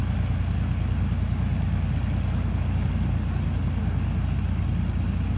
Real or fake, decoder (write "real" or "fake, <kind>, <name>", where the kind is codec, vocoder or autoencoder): real